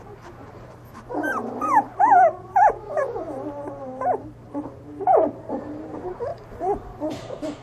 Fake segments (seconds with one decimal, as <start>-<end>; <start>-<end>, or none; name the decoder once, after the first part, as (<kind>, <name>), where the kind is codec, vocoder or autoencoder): 0.0-7.6 (vocoder, BigVGAN v2)